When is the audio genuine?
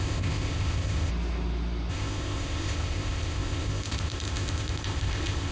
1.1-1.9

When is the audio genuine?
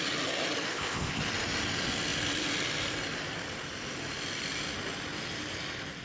0.0-0.7; 1.2-6.0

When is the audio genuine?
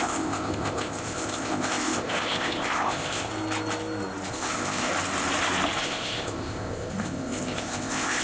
3.3-4.3; 4.9-5.8